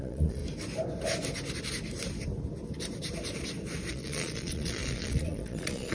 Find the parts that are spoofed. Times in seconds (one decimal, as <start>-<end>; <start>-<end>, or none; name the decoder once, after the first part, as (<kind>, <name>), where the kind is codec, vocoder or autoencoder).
0.0-0.4 (vocoder, Vocos); 3.9-5.9